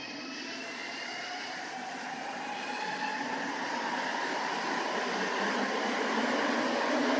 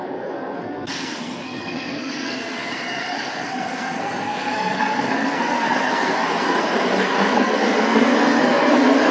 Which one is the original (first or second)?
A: first